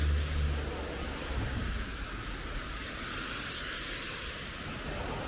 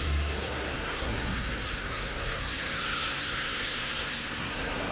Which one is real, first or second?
first